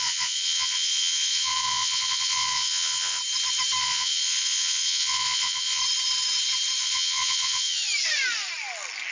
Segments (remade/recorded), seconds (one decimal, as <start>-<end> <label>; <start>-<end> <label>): 0.0-3.2 remade; 3.2-3.8 recorded; 3.8-5.8 remade; 5.8-6.8 recorded; 6.8-7.8 remade; 7.8-9.1 recorded